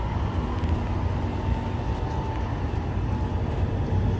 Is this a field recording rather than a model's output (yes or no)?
yes